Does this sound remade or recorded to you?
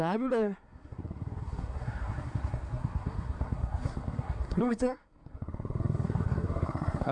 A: remade